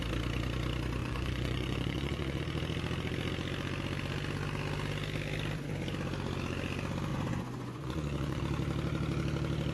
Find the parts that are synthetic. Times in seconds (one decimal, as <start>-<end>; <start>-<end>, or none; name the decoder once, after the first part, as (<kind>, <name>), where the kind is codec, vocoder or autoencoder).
1.0-2.4 (vocoder, Vocos); 7.1-8.4